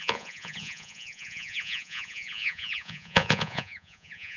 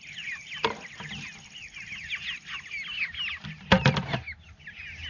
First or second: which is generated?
first